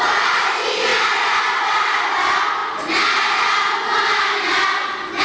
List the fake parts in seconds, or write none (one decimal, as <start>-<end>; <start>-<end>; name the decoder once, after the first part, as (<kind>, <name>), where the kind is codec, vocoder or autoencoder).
none